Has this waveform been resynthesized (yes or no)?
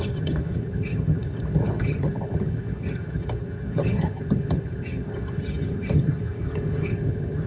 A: yes